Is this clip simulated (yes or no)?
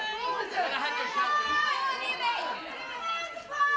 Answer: no